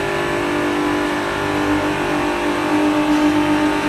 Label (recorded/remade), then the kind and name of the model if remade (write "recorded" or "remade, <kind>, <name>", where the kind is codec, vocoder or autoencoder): recorded